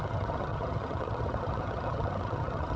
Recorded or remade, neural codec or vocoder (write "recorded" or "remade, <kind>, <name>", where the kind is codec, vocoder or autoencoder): remade, vocoder, HiFi-GAN